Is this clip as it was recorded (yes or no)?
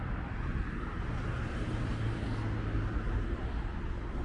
yes